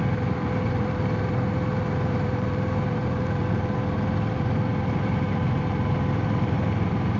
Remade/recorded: remade